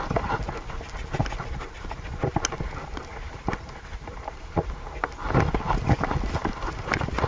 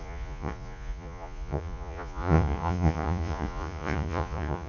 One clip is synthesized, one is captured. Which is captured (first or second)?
first